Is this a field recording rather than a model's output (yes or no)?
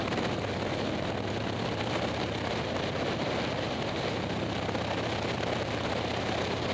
yes